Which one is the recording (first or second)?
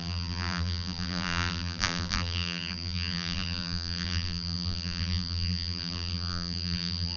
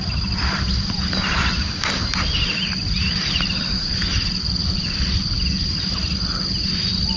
second